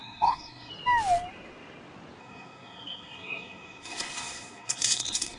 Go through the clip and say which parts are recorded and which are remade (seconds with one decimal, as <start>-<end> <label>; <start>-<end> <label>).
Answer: 0.0-0.7 remade; 0.7-2.2 recorded; 2.2-5.4 remade

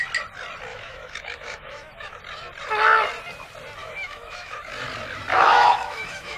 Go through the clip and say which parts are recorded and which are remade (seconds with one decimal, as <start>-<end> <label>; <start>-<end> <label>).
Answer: 0.0-0.7 recorded; 0.7-2.2 remade; 2.2-3.8 recorded; 3.8-4.7 remade; 4.7-5.3 recorded; 5.3-6.4 remade

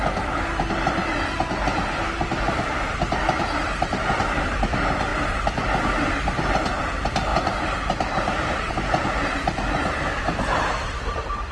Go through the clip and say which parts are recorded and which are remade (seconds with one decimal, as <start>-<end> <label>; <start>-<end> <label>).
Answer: 0.0-7.3 recorded; 7.3-8.7 remade; 8.7-11.5 recorded